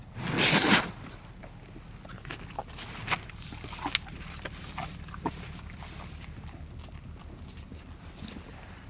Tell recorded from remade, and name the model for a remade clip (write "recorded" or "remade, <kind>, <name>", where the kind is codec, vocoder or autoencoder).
recorded